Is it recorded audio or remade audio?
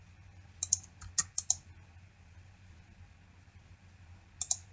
recorded